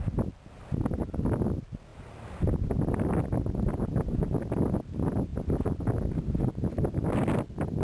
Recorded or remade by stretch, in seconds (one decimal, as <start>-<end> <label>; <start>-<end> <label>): 0.0-7.8 recorded